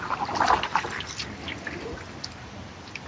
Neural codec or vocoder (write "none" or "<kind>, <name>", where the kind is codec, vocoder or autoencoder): none